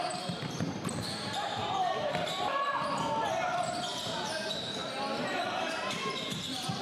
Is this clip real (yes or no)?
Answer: no